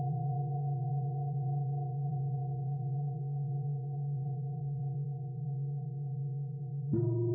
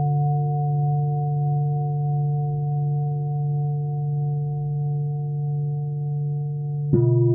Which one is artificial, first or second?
first